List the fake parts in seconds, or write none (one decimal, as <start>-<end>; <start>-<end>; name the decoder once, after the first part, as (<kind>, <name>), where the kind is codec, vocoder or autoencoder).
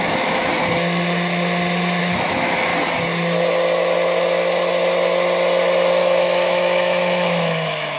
0.0-0.5 (autoencoder, DAC-VAE); 2.0-2.7; 6.0-8.0